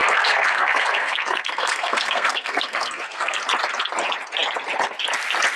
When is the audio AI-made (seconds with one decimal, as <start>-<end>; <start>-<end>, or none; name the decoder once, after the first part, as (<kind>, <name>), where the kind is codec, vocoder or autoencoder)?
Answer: 0.0-3.4 (codec, SNAC)